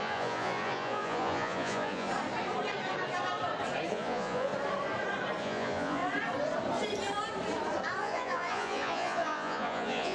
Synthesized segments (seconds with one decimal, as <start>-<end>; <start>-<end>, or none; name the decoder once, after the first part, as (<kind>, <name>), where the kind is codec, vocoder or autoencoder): 0.0-2.1 (vocoder, Vocos); 3.9-4.5; 5.4-6.0; 8.0-10.1